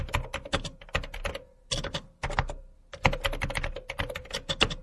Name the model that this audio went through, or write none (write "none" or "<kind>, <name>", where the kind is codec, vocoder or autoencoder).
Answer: none